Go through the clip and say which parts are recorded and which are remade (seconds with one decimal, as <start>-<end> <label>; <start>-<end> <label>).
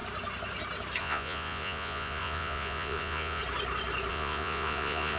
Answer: 0.0-1.0 recorded; 1.0-3.4 remade; 3.4-4.1 recorded; 4.1-5.2 remade